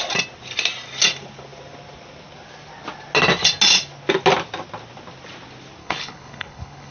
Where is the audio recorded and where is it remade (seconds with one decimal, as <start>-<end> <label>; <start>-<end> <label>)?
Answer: 0.0-5.8 recorded; 5.8-6.9 remade

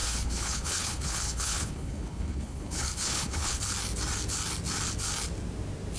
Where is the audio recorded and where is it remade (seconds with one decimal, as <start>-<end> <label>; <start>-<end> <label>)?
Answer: 0.0-3.6 remade; 3.6-6.0 recorded

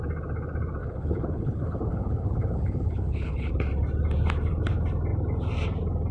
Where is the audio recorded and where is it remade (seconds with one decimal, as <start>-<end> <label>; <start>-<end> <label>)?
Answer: 0.0-0.8 recorded; 0.8-3.5 remade; 3.5-6.1 recorded

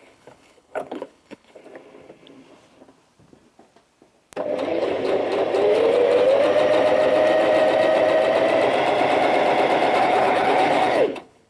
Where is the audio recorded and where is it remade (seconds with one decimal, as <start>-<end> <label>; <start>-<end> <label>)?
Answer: 0.0-1.6 remade; 1.6-4.7 recorded; 4.7-5.2 remade; 5.2-10.0 recorded; 10.0-11.5 remade